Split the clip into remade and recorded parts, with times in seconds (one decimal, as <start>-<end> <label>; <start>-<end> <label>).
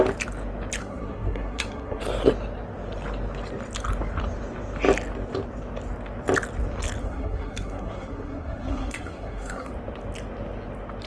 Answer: 0.0-0.8 recorded; 0.8-2.0 remade; 2.0-7.0 recorded; 7.0-9.7 remade; 9.7-11.1 recorded